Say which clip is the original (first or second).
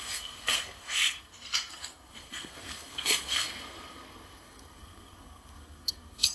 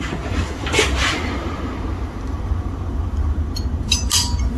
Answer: second